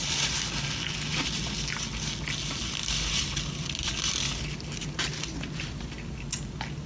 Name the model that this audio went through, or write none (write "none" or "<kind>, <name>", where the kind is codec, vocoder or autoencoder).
none